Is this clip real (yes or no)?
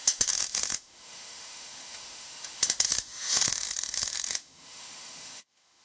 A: no